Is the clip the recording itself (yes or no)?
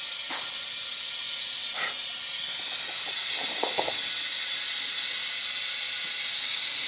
yes